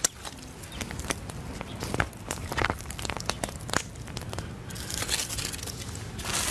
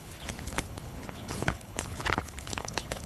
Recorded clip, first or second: first